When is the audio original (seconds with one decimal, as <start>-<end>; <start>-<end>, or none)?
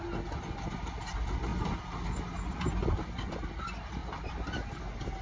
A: 0.0-1.5; 2.3-4.0; 4.8-5.2